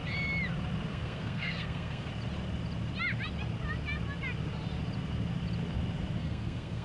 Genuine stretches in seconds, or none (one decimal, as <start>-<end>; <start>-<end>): 0.0-0.9; 2.1-6.2